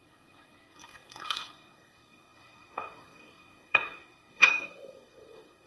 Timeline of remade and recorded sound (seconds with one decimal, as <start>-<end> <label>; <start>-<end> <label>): 0.0-5.7 remade

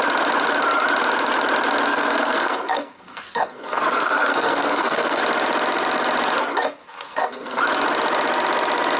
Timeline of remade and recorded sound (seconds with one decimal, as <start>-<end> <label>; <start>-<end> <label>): 0.0-1.9 recorded; 1.9-5.2 remade; 5.2-6.8 recorded; 6.8-7.6 remade; 7.6-9.0 recorded

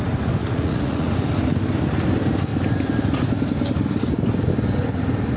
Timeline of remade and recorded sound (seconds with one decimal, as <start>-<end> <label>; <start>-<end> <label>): 0.0-0.4 recorded; 0.4-1.1 remade; 1.1-5.4 recorded

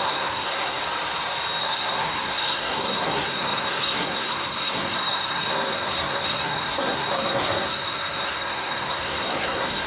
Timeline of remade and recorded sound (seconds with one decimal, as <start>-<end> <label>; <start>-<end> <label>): 0.0-0.8 remade; 0.8-1.6 recorded; 1.6-9.9 remade

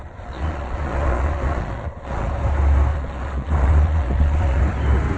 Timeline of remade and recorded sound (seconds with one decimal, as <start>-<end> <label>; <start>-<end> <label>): 0.0-2.3 remade; 2.3-2.9 recorded; 2.9-4.6 remade; 4.6-5.2 recorded

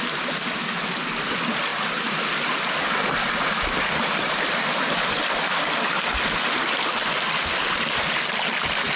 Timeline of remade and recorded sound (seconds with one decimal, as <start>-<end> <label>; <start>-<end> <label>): 0.0-9.0 recorded

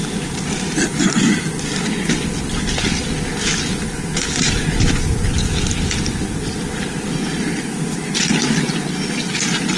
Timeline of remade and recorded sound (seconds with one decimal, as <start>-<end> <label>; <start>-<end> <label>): 0.0-1.6 remade; 1.6-9.8 recorded

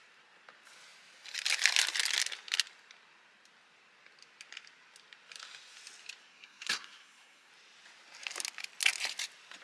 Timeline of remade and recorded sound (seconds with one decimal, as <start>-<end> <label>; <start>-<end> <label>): 0.0-6.2 recorded; 6.2-7.5 remade; 7.5-9.6 recorded